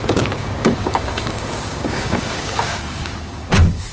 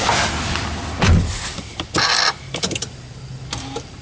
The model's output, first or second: first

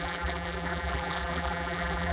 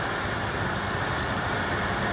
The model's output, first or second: first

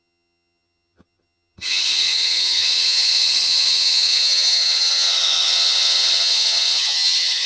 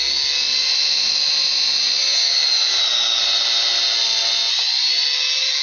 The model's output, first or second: first